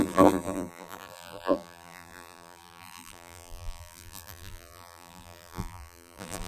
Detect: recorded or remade remade